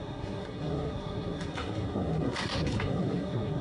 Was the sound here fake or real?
fake